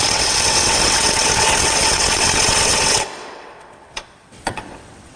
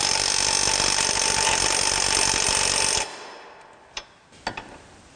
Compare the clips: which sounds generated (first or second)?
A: first